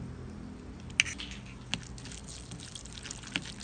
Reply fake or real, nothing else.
real